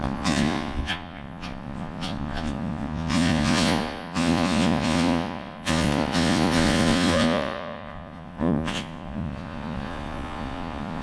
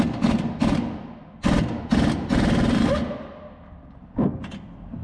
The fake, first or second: first